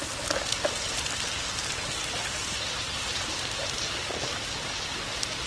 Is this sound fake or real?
real